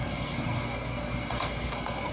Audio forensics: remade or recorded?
remade